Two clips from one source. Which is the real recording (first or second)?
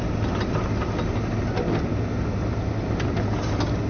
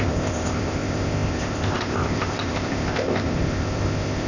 first